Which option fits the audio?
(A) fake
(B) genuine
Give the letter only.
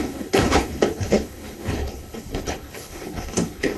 A